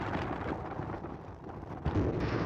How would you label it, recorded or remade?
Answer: recorded